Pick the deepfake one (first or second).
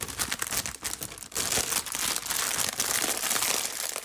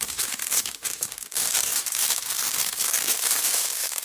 second